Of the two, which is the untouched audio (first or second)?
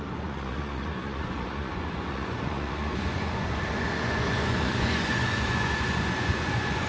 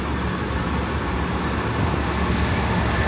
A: second